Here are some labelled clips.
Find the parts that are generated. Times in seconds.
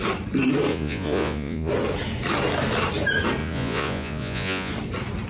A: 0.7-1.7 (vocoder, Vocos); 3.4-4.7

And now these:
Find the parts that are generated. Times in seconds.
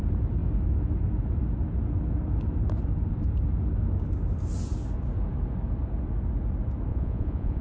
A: 6.9-7.6 (vocoder, Vocos)